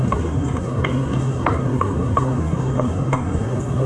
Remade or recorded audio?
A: remade